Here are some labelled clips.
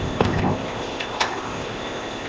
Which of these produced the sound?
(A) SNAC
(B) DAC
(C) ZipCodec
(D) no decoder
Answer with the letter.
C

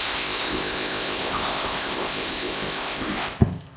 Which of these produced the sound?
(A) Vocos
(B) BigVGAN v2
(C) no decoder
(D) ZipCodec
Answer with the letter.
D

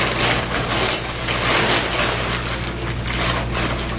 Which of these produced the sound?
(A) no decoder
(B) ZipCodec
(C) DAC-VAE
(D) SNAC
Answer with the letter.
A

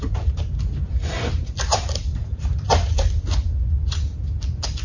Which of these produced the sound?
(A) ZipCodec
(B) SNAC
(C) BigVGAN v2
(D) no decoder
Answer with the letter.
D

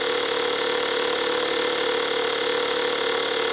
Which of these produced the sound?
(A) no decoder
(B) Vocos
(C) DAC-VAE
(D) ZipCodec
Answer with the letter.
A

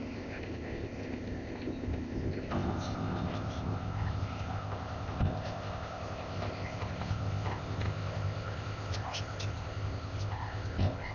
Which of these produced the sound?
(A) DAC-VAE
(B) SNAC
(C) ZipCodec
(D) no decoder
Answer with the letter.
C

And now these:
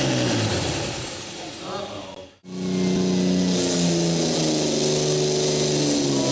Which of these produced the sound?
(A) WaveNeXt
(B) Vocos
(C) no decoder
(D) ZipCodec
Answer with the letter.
C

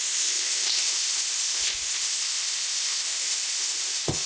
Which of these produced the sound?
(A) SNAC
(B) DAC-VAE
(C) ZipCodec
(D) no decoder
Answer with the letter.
C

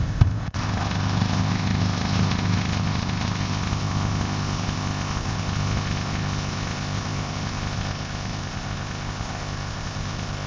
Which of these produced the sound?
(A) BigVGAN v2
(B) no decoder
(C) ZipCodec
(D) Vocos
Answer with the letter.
C